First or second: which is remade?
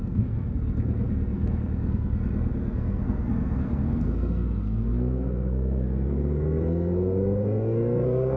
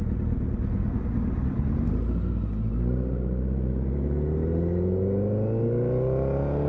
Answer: first